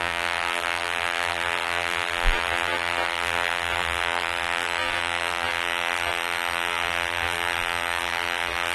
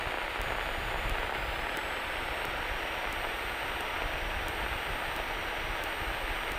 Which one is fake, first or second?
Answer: first